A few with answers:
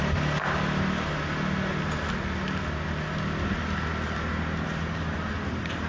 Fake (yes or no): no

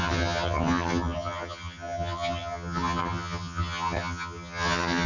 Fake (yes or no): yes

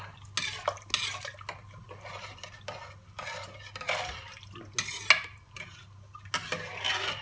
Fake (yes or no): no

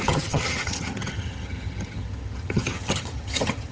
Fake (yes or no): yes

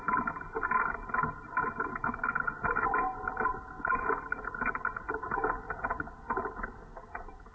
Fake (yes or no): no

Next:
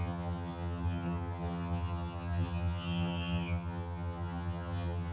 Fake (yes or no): yes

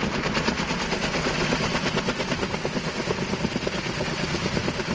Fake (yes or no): no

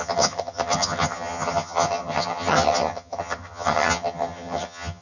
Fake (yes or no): yes